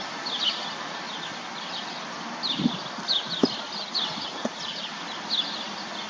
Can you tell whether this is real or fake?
real